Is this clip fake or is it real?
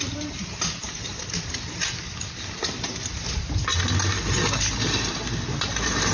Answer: real